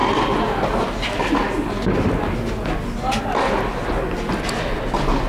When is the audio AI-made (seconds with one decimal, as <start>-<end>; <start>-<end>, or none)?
none

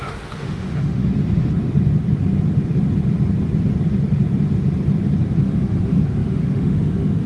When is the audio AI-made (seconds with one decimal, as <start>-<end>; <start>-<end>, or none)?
0.0-1.0; 5.4-7.3

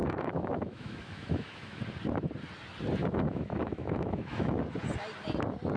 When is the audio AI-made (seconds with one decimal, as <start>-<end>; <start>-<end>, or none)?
0.0-1.8; 3.0-4.6

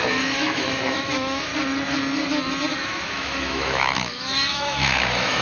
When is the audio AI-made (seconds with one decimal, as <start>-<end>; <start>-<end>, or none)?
0.0-1.5; 2.7-5.4

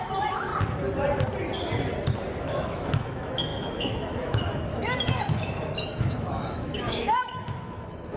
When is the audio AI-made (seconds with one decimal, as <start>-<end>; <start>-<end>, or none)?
0.0-0.5; 2.4-8.2

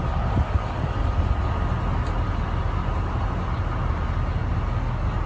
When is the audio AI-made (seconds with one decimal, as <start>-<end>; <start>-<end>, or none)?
none

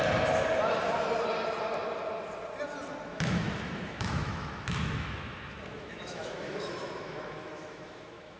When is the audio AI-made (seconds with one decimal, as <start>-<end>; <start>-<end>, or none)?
3.1-8.4